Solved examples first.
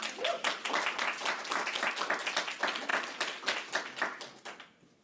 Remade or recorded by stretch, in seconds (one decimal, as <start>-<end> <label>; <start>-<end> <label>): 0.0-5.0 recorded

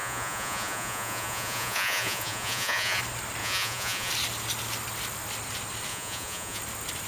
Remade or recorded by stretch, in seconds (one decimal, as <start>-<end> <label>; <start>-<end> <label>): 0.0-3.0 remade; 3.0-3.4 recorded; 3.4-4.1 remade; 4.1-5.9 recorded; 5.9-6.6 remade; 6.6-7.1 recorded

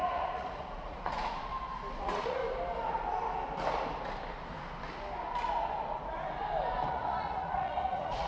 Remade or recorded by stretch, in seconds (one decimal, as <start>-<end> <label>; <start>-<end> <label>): 0.0-1.5 remade; 1.5-2.0 recorded; 2.0-2.4 remade; 2.4-6.9 recorded; 6.9-8.3 remade